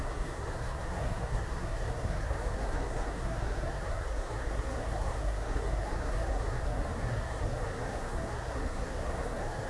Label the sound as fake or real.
fake